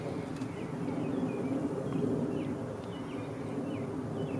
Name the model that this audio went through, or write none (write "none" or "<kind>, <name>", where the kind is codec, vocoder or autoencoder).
none